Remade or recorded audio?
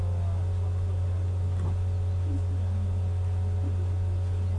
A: recorded